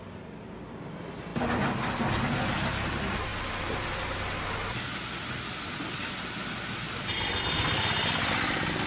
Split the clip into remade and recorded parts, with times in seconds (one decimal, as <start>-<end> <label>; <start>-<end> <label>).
0.0-8.9 recorded